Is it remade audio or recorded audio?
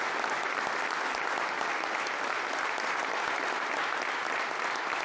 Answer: recorded